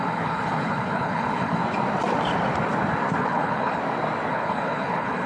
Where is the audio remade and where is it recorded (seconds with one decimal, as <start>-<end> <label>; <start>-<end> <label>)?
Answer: 0.0-1.6 remade; 1.6-3.2 recorded; 3.2-3.8 remade; 3.8-4.3 recorded; 4.3-5.3 remade